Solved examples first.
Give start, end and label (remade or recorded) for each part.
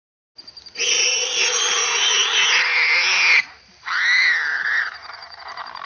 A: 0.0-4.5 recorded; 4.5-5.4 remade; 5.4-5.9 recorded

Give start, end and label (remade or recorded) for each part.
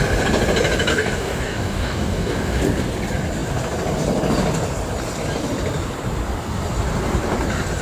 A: 0.0-0.9 recorded; 0.9-2.6 remade; 2.6-7.8 recorded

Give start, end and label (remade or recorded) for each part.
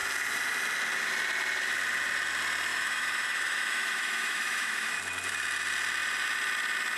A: 0.0-2.7 recorded; 2.7-5.0 remade; 5.0-7.0 recorded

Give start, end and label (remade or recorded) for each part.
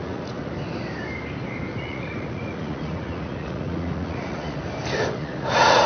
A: 0.0-0.5 remade; 0.5-1.7 recorded; 1.7-4.6 remade; 4.6-5.1 recorded; 5.1-5.9 remade